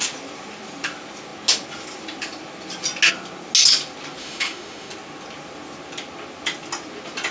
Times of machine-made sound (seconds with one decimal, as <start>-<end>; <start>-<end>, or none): 4.2-4.9